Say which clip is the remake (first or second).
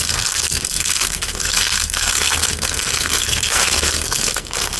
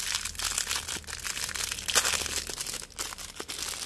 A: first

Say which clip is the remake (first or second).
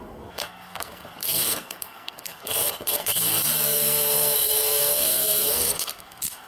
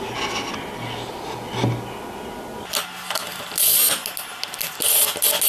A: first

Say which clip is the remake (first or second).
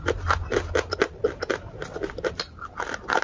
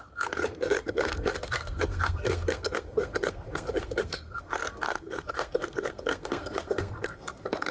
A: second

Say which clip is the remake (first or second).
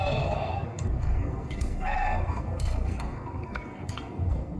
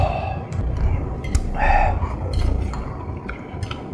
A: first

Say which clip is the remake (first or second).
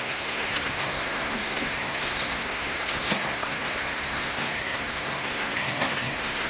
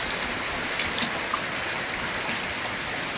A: first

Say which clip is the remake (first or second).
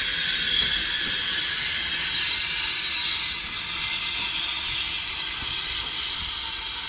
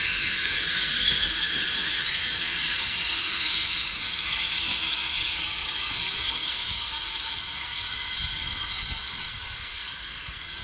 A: second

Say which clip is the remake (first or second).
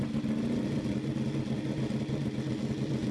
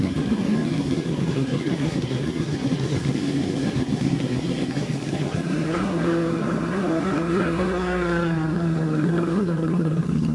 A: second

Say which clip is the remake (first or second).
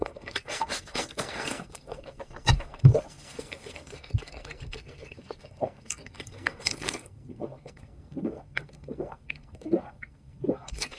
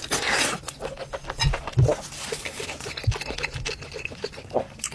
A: first